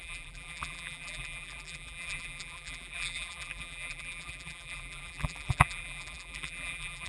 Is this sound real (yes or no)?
no